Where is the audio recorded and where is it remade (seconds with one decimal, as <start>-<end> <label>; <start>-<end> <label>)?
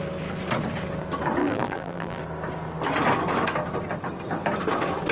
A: 0.0-1.4 recorded; 1.4-2.2 remade; 2.2-5.1 recorded